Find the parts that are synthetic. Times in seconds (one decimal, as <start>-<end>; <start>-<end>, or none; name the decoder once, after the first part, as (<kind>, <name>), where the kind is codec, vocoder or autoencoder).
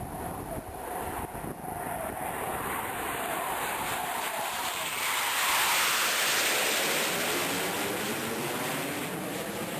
2.5-4.9 (vocoder, BigVGAN v2)